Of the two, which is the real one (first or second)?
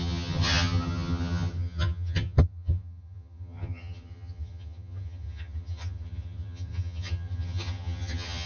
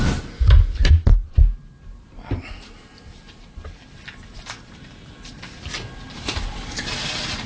second